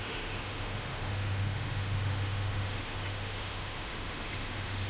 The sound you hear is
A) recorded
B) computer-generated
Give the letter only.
B